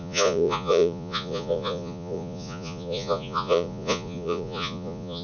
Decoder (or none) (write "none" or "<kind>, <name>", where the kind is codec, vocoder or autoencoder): vocoder, Vocos